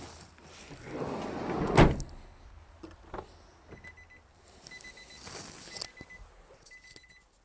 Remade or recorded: recorded